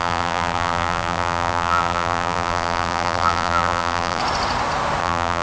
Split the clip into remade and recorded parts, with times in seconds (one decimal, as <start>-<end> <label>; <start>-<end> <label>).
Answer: 0.0-4.2 remade; 4.2-5.0 recorded; 5.0-5.4 remade

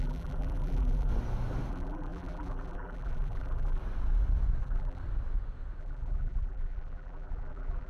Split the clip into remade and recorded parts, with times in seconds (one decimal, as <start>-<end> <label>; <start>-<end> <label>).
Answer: 0.0-1.1 remade; 1.1-1.7 recorded; 1.7-3.8 remade; 3.8-4.6 recorded; 4.6-5.0 remade; 5.0-5.8 recorded; 5.8-7.9 remade

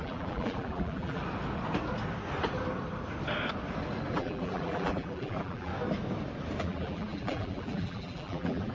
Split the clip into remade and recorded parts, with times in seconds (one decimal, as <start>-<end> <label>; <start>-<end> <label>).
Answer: 0.0-1.2 remade; 1.2-4.1 recorded; 4.1-5.7 remade; 5.7-6.6 recorded; 6.6-8.7 remade